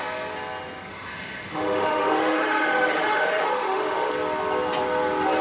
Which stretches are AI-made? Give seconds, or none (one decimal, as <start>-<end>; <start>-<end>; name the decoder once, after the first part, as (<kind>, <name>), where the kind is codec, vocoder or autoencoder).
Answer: 0.9-4.1 (autoencoder, DAC-VAE)